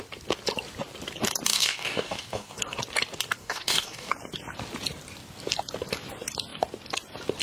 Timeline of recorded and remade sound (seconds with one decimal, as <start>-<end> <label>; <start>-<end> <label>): 0.0-1.5 recorded; 1.5-2.6 remade; 2.6-3.4 recorded; 3.4-4.1 remade; 4.1-7.4 recorded